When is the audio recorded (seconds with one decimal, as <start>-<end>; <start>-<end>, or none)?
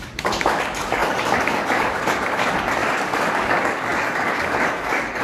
none